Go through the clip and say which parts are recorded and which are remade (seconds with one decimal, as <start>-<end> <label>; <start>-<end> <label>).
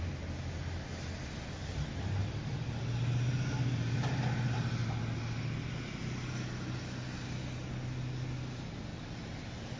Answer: 0.0-2.2 remade; 2.2-3.7 recorded; 3.7-4.8 remade; 4.8-6.8 recorded; 6.8-8.9 remade; 8.9-9.8 recorded